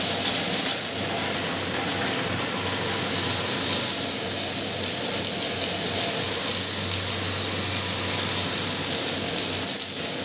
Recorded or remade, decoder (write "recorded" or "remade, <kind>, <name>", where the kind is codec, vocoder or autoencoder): recorded